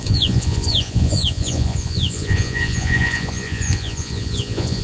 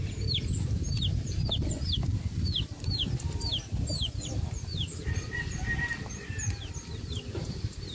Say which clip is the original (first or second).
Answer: second